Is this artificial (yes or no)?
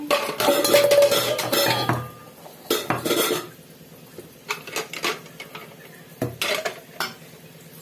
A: no